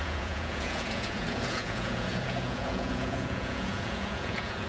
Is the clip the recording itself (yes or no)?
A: no